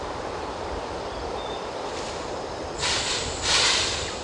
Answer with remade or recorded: remade